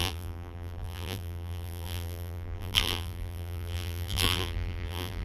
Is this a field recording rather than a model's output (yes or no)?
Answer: no